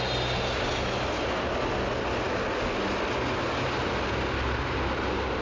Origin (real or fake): real